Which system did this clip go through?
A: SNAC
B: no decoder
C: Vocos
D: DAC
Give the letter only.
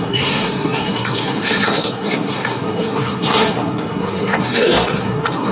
A